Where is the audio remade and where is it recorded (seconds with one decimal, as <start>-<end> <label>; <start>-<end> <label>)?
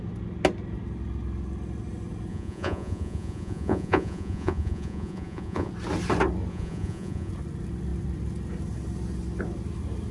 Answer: 0.0-2.3 recorded; 2.3-5.7 remade; 5.7-6.5 recorded; 6.5-7.3 remade; 7.3-10.1 recorded